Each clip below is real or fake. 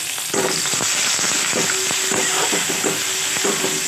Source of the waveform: real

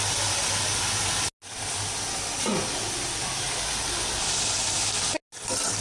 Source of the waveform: real